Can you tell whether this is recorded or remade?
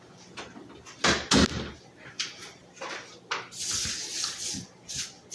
recorded